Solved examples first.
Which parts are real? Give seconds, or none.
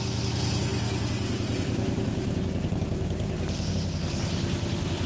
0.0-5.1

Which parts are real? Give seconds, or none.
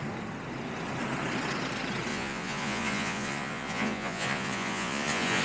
0.0-2.1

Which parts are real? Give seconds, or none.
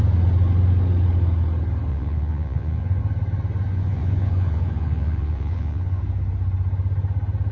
0.0-1.9; 3.0-3.7; 6.0-7.5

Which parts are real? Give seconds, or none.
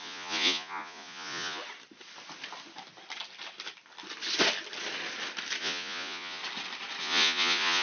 1.6-5.6; 6.4-7.0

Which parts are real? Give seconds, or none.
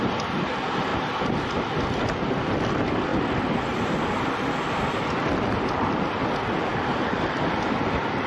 0.0-8.3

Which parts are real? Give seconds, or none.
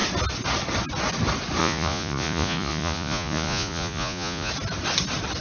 0.0-1.6; 4.5-5.4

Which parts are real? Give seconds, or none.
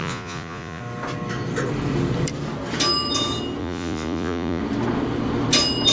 0.8-3.6; 4.6-5.9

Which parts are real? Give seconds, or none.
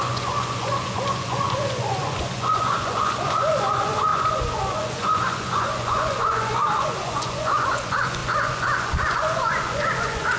none